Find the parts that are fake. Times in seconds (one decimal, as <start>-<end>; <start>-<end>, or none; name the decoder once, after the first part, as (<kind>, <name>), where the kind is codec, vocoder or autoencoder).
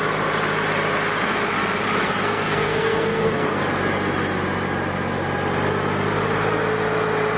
2.0-3.6 (codec, SNAC)